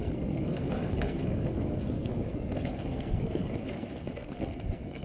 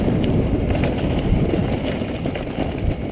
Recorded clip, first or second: second